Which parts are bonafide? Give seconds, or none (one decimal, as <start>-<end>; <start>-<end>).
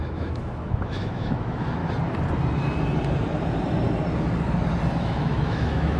1.8-5.0